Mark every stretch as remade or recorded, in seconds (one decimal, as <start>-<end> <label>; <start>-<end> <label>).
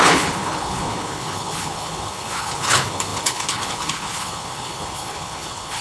0.0-5.8 remade